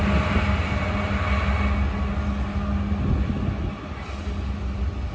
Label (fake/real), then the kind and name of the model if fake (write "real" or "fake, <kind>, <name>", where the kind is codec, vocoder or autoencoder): real